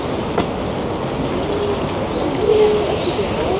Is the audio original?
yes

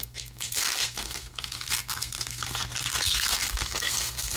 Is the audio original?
no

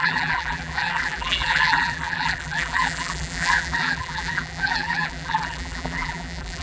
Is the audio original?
no